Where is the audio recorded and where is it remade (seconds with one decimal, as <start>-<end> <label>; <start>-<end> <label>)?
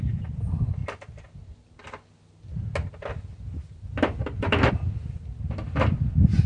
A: 0.0-6.5 recorded